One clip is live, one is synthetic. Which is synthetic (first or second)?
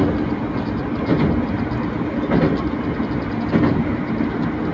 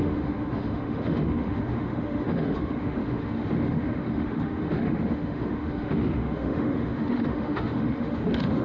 second